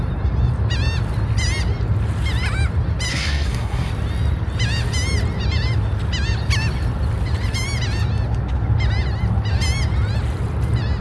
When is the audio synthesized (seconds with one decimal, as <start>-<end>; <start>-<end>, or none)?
3.1-3.9